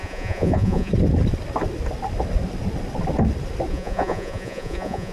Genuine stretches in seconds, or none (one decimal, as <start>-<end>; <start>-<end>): 0.9-3.7